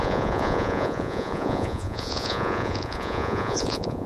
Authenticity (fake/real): fake